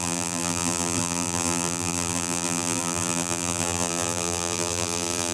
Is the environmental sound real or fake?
fake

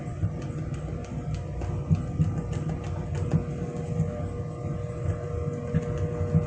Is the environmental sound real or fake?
real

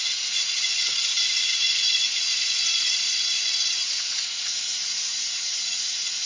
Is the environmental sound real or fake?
fake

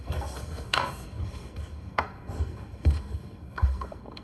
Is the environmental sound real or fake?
fake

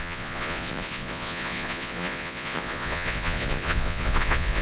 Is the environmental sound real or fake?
fake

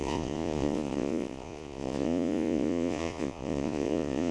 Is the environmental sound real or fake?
fake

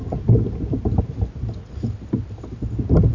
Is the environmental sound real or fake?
real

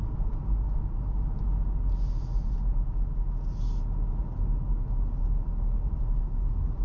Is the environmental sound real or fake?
real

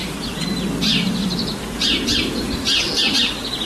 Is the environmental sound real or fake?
real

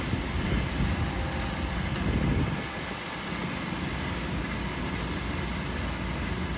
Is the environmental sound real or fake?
real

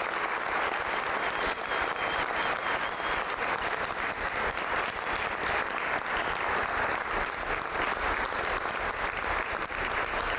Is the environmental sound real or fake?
real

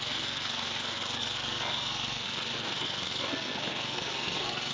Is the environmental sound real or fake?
fake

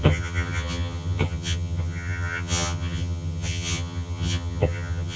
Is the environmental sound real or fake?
fake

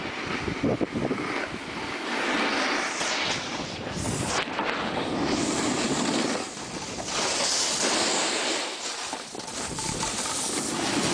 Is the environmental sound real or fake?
real